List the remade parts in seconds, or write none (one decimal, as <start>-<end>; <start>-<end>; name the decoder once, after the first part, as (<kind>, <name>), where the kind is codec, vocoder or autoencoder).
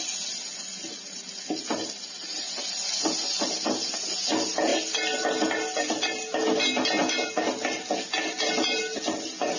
none